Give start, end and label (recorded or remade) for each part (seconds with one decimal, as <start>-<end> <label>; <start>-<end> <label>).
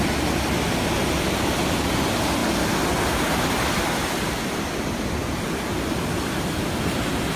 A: 0.0-7.4 recorded